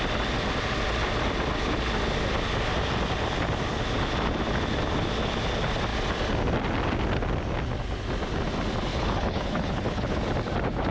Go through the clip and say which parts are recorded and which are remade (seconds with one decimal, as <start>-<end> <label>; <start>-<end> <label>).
0.0-8.9 recorded; 8.9-10.2 remade; 10.2-10.9 recorded